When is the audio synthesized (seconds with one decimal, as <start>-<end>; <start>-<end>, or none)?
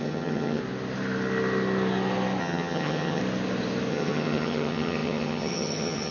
0.0-0.6; 2.4-3.2; 3.9-6.1